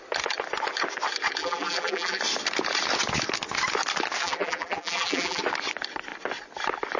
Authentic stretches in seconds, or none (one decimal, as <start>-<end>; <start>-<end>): 0.0-1.4; 2.2-4.2; 5.4-7.0